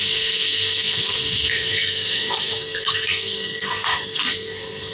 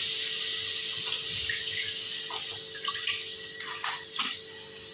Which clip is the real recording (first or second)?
second